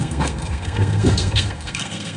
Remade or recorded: remade